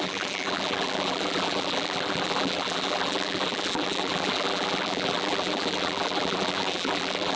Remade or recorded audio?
remade